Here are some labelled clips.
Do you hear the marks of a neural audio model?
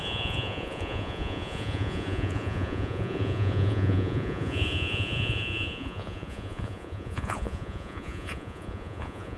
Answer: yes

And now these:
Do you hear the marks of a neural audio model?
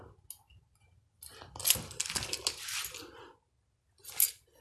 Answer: no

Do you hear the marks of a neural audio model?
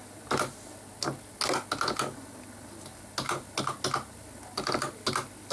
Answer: no